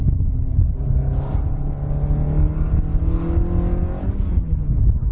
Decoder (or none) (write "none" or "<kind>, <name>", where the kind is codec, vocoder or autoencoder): none